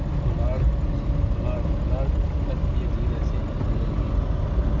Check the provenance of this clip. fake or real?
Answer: real